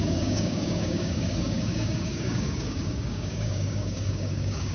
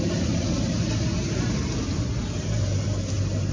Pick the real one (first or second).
second